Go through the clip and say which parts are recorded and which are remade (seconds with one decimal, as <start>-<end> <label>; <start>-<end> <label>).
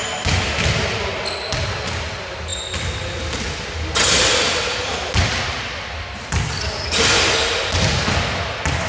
0.0-8.9 recorded